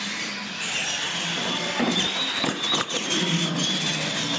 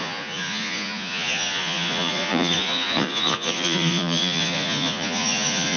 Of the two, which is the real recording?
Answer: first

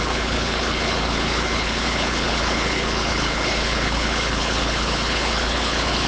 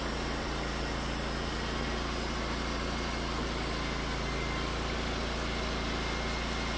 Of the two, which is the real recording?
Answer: second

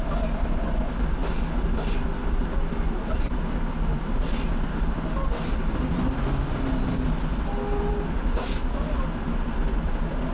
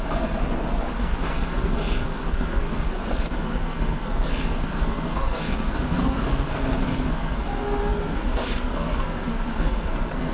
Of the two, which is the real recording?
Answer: first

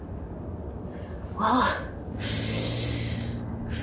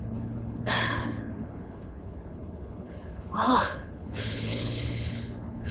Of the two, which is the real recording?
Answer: first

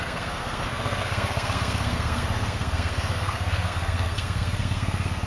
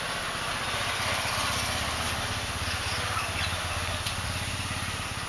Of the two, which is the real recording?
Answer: second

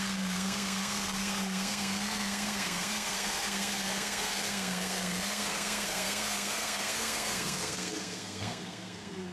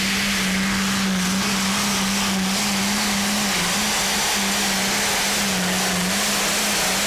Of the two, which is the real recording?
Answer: second